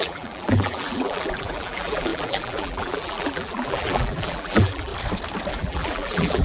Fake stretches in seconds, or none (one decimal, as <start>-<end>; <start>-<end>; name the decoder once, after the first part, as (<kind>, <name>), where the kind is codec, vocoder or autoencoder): 0.0-4.9 (vocoder, BigVGAN v2); 5.5-6.4